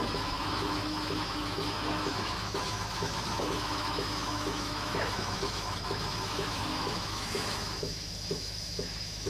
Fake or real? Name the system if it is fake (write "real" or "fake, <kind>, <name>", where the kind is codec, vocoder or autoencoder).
fake, autoencoder, DAC-VAE